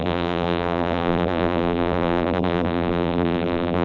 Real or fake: fake